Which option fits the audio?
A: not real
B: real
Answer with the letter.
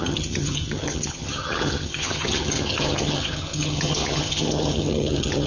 A